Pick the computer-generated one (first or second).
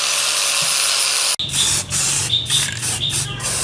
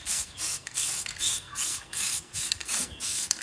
second